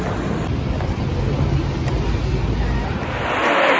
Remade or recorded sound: recorded